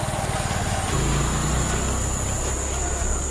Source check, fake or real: real